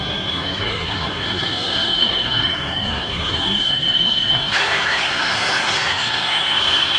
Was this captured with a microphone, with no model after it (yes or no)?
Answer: no